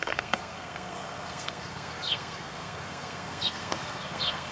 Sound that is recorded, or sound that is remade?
remade